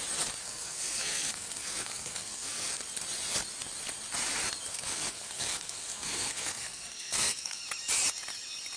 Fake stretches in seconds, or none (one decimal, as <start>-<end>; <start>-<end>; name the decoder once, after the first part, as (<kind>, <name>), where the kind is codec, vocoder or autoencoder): 0.4-2.8 (codec, SNAC); 4.7-7.6